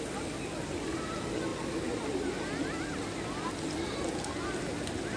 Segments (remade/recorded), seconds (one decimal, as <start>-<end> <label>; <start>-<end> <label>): 0.0-5.2 recorded